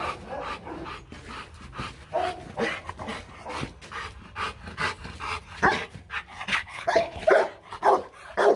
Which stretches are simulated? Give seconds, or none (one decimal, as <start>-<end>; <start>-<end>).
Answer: 6.5-7.2